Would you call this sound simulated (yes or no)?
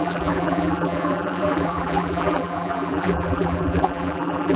yes